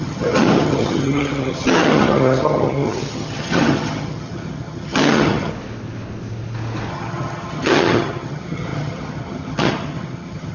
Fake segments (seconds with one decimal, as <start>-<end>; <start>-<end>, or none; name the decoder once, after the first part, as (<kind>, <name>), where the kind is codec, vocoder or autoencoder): 0.0-5.5 (vocoder, HiFi-GAN); 6.9-10.5